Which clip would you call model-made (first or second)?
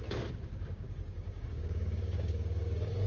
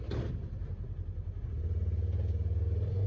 first